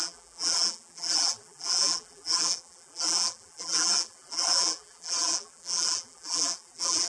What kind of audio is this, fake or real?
fake